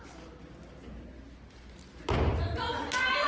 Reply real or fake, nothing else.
real